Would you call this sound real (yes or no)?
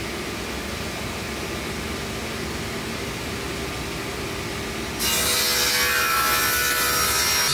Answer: yes